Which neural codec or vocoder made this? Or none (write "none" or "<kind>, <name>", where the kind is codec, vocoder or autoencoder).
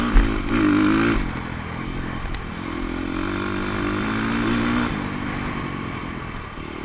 none